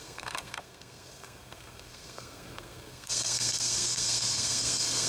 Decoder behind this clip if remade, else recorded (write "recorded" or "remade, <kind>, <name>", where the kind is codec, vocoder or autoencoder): remade, codec, SNAC